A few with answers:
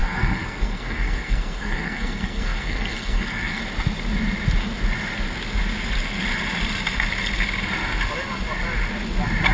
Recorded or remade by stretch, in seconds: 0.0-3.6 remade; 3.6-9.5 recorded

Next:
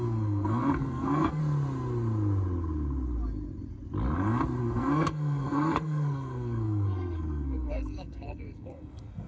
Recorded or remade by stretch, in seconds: 0.0-1.4 remade; 1.4-4.6 recorded; 4.6-9.3 remade

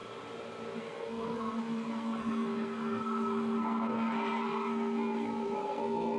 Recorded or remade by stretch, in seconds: 0.0-0.8 recorded; 0.8-6.2 remade

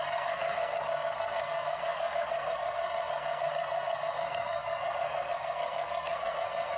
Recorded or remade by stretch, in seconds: 0.0-6.8 remade